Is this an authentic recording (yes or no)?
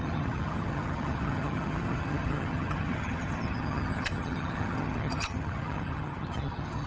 no